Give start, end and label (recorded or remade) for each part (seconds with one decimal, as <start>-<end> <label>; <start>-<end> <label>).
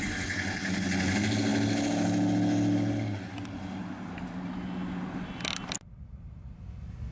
0.0-7.1 recorded